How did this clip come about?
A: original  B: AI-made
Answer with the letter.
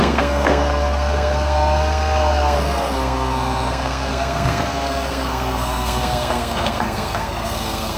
B